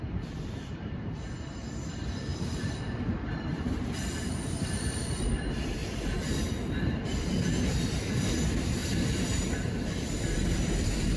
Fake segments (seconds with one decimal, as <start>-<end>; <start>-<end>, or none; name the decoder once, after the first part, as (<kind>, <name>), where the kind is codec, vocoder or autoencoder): 0.0-5.8 (vocoder, BigVGAN v2); 7.9-11.2